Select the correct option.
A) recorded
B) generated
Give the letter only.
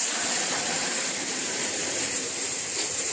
B